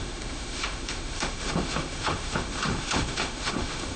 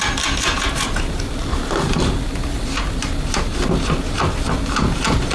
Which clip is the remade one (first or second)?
first